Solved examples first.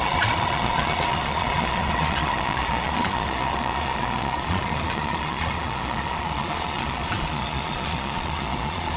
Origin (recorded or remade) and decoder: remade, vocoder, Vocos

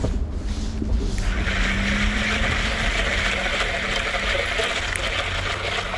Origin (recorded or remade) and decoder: recorded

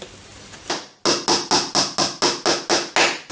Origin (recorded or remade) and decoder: recorded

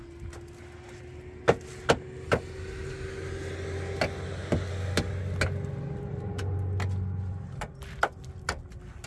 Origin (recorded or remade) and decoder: recorded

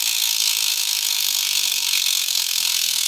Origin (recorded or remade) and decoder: remade, codec, SNAC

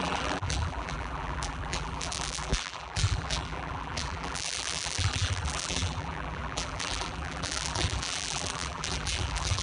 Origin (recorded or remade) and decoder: remade, vocoder, BigVGAN v2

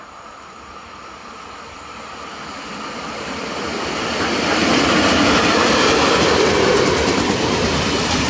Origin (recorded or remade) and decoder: remade, vocoder, BigVGAN v2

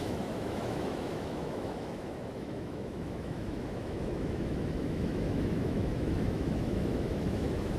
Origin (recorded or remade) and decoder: remade, autoencoder, DAC-VAE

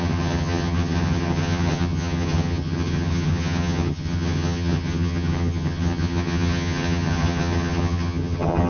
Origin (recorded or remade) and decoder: remade, vocoder, HiFi-GAN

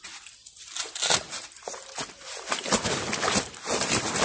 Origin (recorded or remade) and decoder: recorded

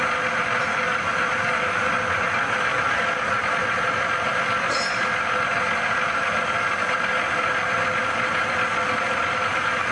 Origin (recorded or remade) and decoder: recorded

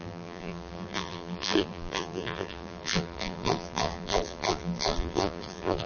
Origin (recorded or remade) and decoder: remade, vocoder, BigVGAN v2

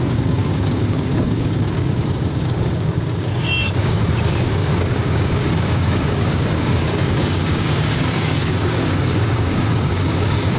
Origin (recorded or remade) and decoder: remade, codec, DAC